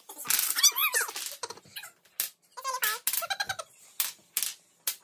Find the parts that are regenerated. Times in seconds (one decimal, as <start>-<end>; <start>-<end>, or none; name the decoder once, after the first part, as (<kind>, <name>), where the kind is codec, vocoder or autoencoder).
none